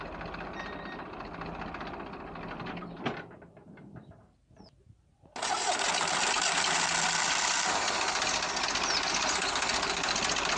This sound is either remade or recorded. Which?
recorded